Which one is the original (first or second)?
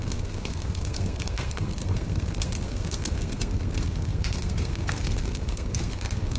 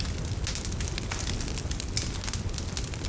second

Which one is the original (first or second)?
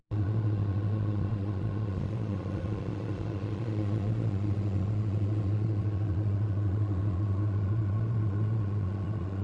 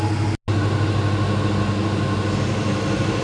second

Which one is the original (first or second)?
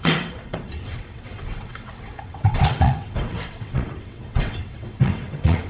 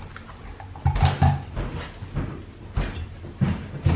second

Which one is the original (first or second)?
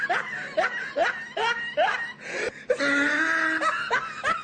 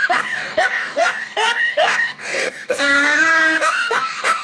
first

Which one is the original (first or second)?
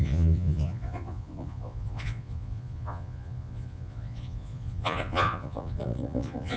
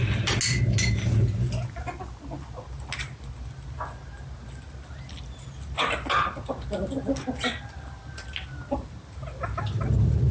second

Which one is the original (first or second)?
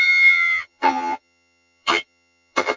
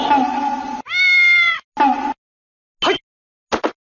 second